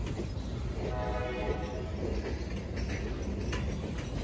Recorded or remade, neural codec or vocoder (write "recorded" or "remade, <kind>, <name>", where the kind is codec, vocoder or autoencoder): recorded